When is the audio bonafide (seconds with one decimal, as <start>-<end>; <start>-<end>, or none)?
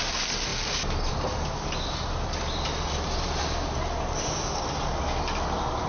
0.0-5.9